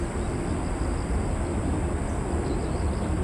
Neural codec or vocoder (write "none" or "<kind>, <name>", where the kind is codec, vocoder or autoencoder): none